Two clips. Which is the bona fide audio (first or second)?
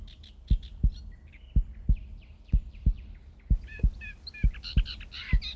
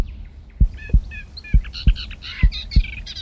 first